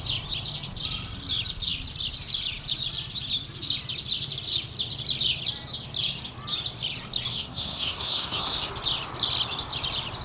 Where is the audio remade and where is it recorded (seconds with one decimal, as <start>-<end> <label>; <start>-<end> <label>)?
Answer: 0.0-7.3 recorded; 7.3-8.7 remade; 8.7-10.2 recorded